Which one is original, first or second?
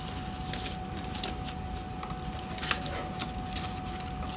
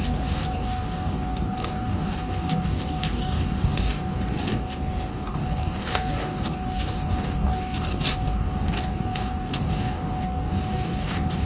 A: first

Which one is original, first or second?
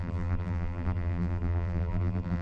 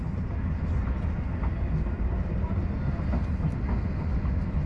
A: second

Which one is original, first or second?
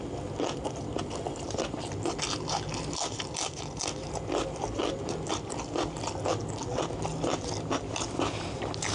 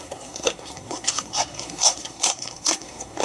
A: first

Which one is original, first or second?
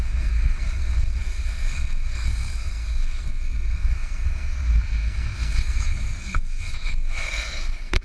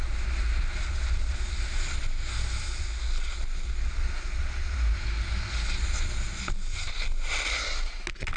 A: second